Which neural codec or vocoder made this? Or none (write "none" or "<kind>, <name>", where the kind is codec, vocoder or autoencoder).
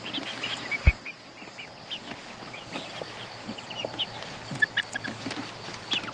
none